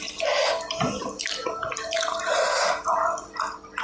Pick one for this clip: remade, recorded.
remade